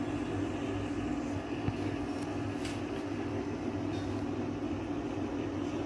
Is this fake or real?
real